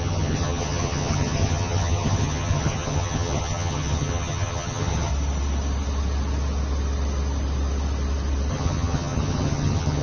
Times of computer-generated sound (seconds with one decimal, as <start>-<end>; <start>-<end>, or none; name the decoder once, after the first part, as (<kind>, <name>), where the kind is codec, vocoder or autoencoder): 0.0-5.1 (vocoder, HiFi-GAN); 8.5-10.0